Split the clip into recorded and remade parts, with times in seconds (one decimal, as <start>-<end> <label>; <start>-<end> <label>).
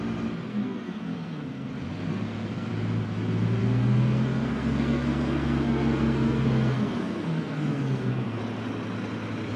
0.0-0.5 recorded; 0.5-1.7 remade; 1.7-2.1 recorded; 2.1-2.7 remade; 2.7-3.6 recorded; 3.6-8.4 remade; 8.4-9.6 recorded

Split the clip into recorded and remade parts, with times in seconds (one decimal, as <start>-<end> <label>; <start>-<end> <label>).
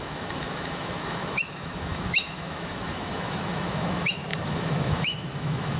0.0-5.8 remade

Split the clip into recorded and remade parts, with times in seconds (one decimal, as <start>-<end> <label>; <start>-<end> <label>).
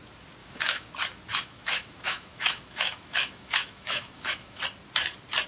0.0-0.4 recorded; 0.4-0.9 remade; 0.9-1.3 recorded; 1.3-4.6 remade; 4.6-5.5 recorded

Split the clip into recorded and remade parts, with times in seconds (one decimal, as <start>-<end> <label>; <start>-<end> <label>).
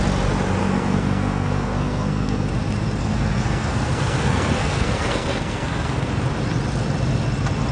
0.0-0.6 recorded; 0.6-2.5 remade; 2.5-3.0 recorded; 3.0-6.1 remade; 6.1-7.7 recorded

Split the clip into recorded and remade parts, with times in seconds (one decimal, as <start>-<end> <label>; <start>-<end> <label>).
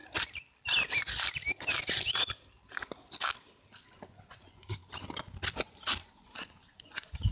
0.0-3.7 recorded; 3.7-4.8 remade; 4.8-6.0 recorded; 6.0-7.3 remade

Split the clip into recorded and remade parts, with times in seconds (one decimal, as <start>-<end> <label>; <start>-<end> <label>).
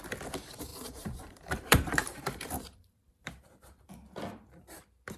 0.0-0.7 recorded; 0.7-3.8 remade; 3.8-5.2 recorded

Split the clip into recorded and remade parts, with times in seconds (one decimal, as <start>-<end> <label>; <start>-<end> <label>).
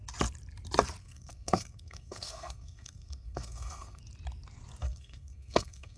0.0-1.0 recorded; 1.0-4.0 remade; 4.0-4.8 recorded; 4.8-6.0 remade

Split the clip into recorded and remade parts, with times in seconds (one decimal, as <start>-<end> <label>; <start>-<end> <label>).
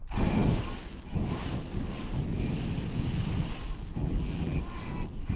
0.0-4.0 recorded; 4.0-4.6 remade; 4.6-5.4 recorded